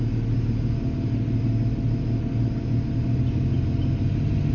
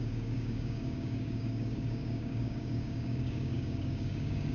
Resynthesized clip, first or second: second